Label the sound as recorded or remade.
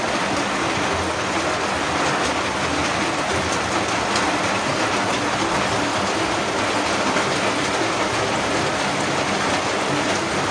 recorded